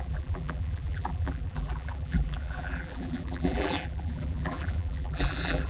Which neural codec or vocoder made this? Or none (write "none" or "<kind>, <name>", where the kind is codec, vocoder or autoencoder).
vocoder, BigVGAN v2